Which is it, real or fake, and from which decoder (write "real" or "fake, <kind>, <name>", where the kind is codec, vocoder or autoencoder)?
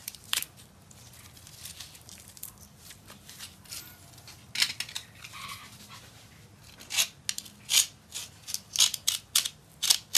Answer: real